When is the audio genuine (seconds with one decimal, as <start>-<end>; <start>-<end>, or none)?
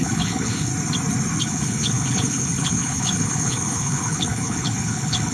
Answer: 0.7-1.4